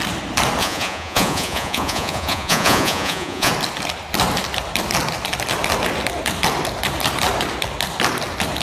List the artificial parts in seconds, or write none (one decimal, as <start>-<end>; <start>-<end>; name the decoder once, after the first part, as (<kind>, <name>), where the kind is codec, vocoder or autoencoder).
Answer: 0.6-3.5 (vocoder, Vocos)